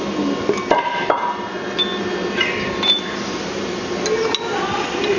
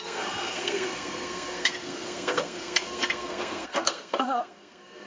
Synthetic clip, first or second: second